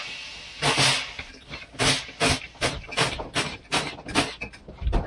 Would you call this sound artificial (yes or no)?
no